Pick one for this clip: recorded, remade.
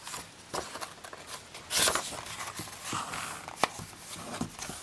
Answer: recorded